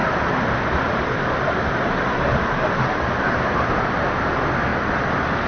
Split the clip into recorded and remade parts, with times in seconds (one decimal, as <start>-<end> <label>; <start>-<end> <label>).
0.0-5.5 recorded